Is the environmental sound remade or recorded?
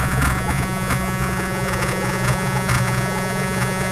remade